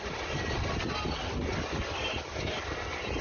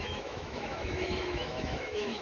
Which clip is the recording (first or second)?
first